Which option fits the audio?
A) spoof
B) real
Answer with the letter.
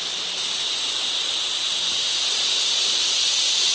B